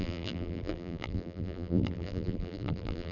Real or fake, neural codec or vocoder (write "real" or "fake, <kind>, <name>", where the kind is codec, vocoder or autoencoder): fake, vocoder, BigVGAN v2